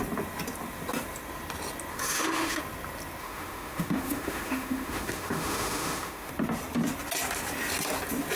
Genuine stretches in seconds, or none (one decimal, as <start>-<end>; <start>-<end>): 0.0-1.9; 2.6-3.2; 6.3-8.4